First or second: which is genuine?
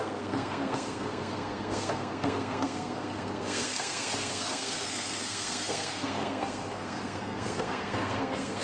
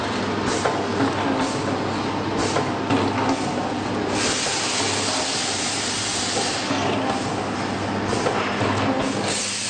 second